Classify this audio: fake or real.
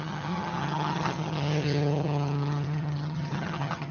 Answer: fake